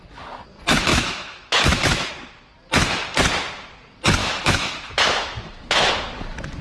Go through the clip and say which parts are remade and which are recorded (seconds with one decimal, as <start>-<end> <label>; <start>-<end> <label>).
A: 0.0-0.9 recorded; 0.9-2.1 remade; 2.1-4.2 recorded; 4.2-5.9 remade; 5.9-6.6 recorded